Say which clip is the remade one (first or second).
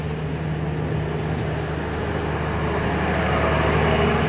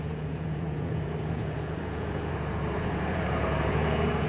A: second